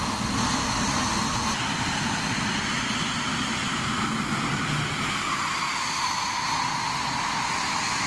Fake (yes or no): no